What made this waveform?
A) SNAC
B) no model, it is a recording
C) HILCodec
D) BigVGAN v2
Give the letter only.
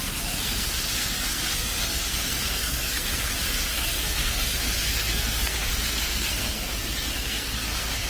A